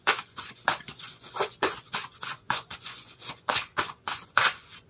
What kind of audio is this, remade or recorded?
remade